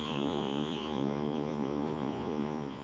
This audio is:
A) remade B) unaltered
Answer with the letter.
A